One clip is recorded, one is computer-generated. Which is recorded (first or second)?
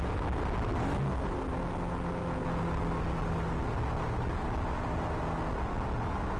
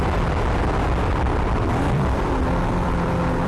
first